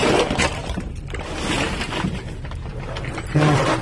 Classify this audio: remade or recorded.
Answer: remade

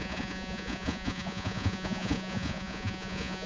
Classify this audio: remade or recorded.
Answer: remade